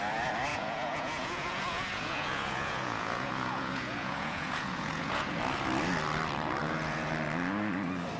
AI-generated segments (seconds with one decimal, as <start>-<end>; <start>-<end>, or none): 0.5-5.4; 6.6-7.1

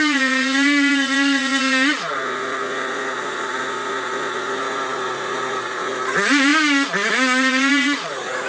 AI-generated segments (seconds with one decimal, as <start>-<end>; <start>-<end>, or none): 0.0-6.5; 7.1-8.5

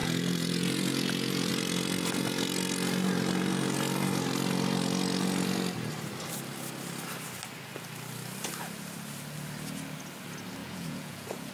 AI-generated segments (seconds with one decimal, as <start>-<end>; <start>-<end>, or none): 0.0-1.5; 10.6-11.5

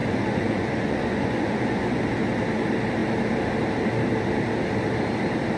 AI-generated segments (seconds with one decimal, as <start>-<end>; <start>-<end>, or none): 0.0-2.0

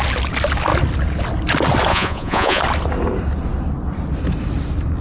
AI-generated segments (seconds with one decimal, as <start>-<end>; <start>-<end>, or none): 1.9-2.6